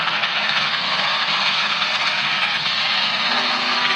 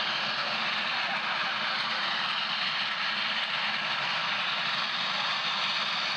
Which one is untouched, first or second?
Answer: second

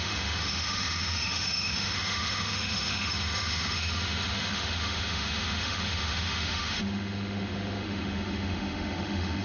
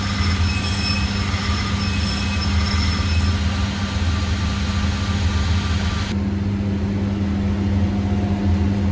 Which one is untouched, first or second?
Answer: second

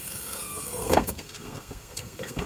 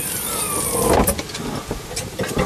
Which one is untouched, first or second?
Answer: second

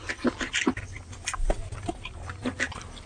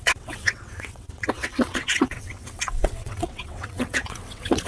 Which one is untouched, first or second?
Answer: first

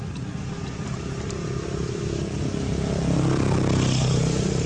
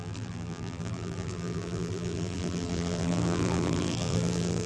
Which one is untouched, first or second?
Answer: first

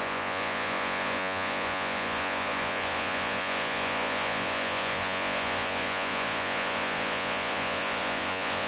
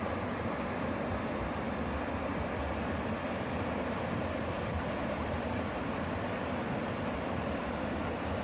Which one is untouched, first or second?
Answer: second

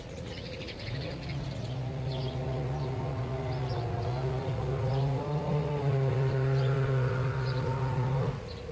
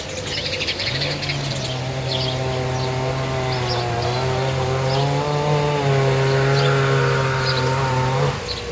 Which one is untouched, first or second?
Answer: second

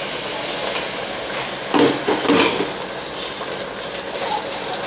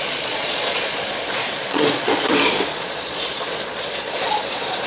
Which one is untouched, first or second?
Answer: first